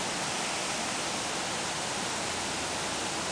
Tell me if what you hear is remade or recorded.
recorded